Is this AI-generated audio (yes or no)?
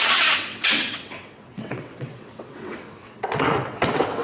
yes